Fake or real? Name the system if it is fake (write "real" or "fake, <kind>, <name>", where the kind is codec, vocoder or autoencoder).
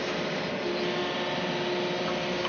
real